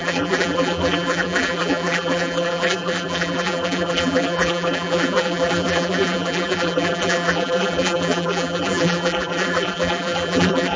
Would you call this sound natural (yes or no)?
no